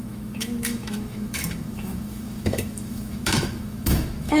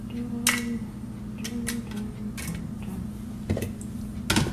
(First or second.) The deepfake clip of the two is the first